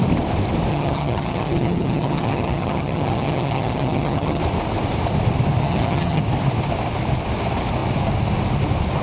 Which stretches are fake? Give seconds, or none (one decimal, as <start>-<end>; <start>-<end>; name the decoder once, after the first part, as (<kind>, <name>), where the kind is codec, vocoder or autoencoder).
0.7-4.4 (vocoder, HiFi-GAN); 5.6-6.2